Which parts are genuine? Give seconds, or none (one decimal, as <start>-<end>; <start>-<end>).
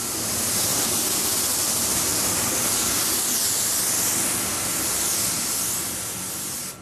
0.7-1.4